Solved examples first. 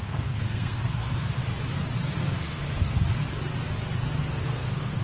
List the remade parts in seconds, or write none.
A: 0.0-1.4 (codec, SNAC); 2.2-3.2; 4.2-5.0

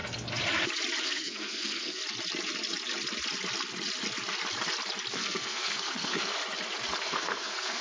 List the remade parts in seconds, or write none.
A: 1.0-2.0 (codec, SNAC); 5.1-6.4; 7.0-7.8

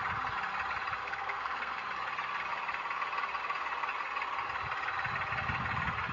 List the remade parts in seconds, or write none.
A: 1.0-1.8 (codec, SNAC)

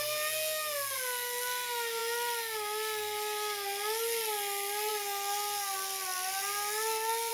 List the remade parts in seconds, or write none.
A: none

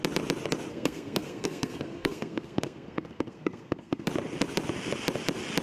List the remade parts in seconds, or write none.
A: 0.7-4.1 (codec, SNAC)